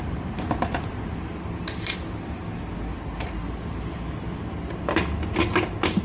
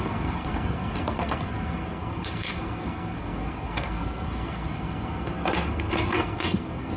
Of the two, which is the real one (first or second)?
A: first